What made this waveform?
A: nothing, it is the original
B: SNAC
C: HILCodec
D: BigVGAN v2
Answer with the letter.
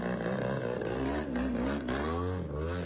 A